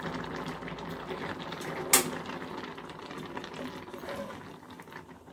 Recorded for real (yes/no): yes